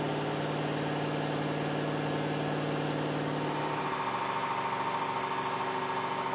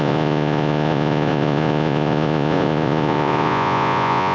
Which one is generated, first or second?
second